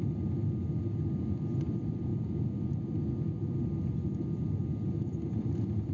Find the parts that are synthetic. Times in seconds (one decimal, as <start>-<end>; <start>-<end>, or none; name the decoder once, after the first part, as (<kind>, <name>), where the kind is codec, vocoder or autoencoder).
none